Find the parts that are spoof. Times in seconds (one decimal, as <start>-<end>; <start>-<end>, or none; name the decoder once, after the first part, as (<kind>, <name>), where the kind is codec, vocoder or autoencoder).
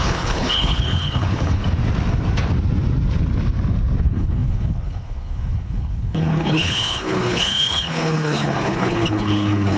0.0-1.6 (codec, HILCodec); 4.0-9.8